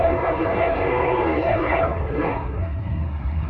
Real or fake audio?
fake